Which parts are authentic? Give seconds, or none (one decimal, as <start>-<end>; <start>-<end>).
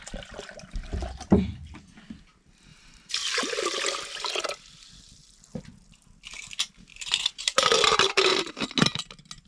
0.0-2.7; 3.4-6.9; 8.5-9.5